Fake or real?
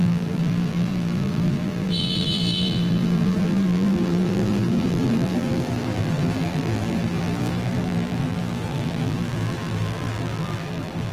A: fake